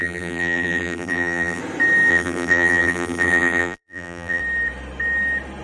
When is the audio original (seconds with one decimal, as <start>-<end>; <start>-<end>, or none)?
1.6-2.1; 4.4-5.6